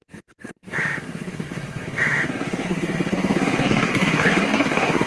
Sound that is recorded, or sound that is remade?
remade